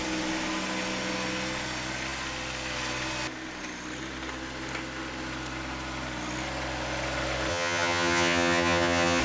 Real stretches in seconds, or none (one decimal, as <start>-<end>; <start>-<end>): 0.0-7.5